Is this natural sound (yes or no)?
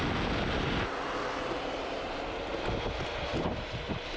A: yes